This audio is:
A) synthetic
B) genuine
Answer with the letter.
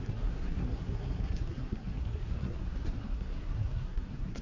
A